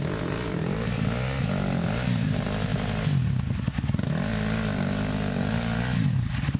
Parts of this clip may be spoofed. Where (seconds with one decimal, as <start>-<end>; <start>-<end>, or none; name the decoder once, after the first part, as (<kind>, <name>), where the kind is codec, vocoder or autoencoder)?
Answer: none